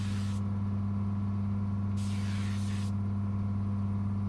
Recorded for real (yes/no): yes